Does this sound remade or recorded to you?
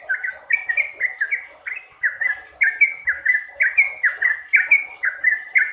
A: recorded